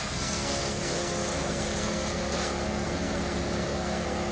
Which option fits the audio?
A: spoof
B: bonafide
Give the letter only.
A